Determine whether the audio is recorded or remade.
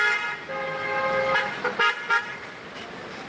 recorded